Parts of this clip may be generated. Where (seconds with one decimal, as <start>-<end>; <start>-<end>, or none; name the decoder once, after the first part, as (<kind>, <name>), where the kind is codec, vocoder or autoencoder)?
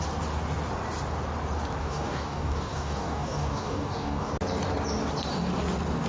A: 1.8-4.3 (codec, DAC)